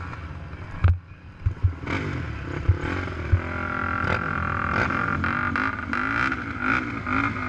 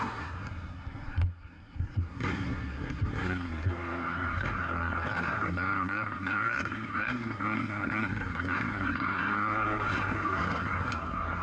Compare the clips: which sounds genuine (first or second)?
first